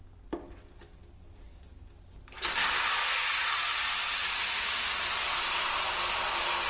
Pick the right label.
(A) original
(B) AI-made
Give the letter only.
A